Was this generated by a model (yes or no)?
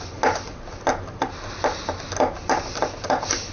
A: no